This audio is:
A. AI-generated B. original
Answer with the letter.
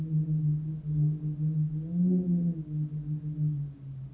B